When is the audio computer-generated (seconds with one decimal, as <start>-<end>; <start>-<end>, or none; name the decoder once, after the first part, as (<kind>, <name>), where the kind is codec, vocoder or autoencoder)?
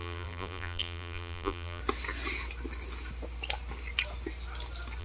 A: 0.0-1.8 (vocoder, BigVGAN v2)